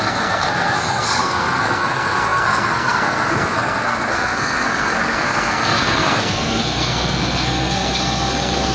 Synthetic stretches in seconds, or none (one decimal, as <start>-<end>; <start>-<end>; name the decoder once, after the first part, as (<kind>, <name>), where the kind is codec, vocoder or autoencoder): 0.0-8.7 (codec, SNAC)